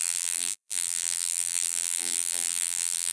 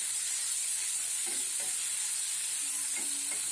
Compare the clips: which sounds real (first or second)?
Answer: second